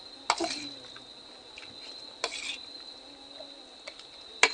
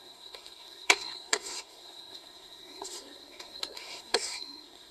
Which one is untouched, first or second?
first